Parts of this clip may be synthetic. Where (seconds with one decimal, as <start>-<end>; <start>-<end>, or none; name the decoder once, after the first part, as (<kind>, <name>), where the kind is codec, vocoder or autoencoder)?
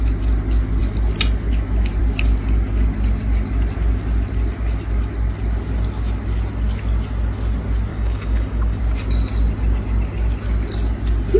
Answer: 7.9-8.8 (codec, DAC)